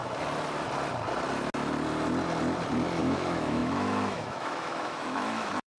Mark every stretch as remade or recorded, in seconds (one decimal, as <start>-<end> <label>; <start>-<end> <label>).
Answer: 0.0-3.0 recorded; 3.0-5.8 remade